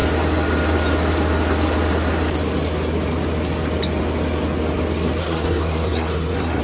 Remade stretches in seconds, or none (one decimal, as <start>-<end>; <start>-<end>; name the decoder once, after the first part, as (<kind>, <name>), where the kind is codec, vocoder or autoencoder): 5.2-6.6 (codec, SNAC)